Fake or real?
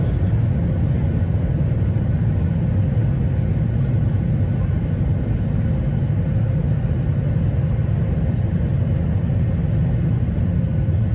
real